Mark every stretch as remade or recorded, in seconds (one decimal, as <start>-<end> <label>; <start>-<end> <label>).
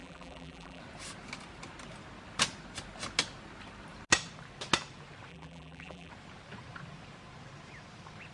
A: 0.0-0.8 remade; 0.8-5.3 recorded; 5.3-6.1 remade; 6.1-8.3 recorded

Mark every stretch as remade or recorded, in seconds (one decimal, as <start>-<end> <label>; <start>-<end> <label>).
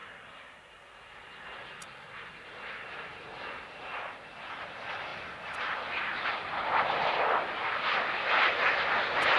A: 0.0-9.4 recorded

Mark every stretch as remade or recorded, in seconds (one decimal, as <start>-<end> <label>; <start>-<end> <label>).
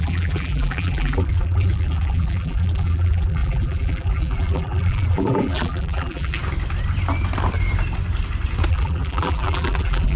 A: 0.0-6.4 remade; 6.4-8.7 recorded; 8.7-10.2 remade